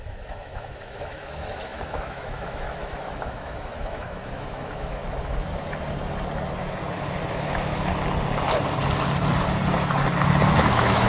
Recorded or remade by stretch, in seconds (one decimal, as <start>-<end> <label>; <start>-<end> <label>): 0.0-5.0 remade; 5.0-7.3 recorded; 7.3-7.9 remade; 7.9-10.7 recorded; 10.7-11.1 remade

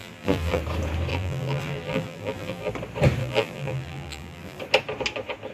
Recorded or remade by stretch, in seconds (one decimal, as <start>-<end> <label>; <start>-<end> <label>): 0.0-0.6 remade; 0.6-1.1 recorded; 1.1-2.7 remade; 2.7-3.2 recorded; 3.2-4.6 remade; 4.6-5.5 recorded

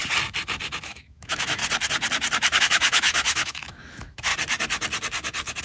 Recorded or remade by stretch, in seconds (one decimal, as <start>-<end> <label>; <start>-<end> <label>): 0.0-0.8 recorded; 0.8-1.6 remade; 1.6-2.6 recorded; 2.6-4.3 remade; 4.3-5.6 recorded

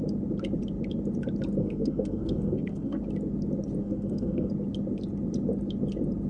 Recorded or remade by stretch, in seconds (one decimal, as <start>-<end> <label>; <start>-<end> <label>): 0.0-1.6 recorded; 1.6-3.0 remade; 3.0-3.8 recorded; 3.8-4.5 remade; 4.5-6.3 recorded

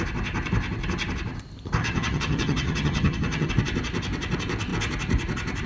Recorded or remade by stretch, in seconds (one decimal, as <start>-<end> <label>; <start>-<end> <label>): 0.0-1.8 recorded; 1.8-3.5 remade; 3.5-5.7 recorded

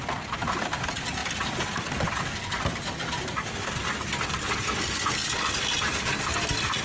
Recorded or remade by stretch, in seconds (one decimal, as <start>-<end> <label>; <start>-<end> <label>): 0.0-1.2 recorded; 1.2-4.9 remade; 4.9-6.8 recorded

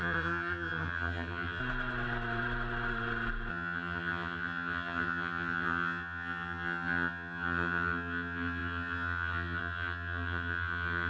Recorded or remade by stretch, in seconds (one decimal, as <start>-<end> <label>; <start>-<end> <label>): 0.0-1.6 remade; 1.6-3.5 recorded; 3.5-11.1 remade

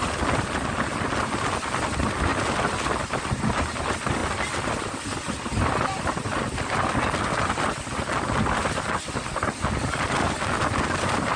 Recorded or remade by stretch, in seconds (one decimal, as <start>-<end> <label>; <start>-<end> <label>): 0.0-11.4 recorded